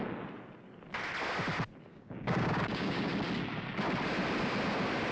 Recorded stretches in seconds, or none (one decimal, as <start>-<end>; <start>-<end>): 0.0-1.9; 3.1-5.1